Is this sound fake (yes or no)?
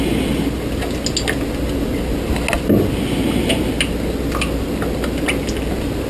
no